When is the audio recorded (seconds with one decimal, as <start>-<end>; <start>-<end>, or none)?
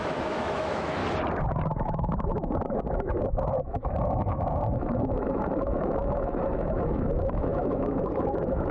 1.0-1.8